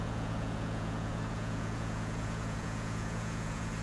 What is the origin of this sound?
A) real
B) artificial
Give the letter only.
B